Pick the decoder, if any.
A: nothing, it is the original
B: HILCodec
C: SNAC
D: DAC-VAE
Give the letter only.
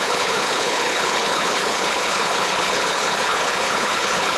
B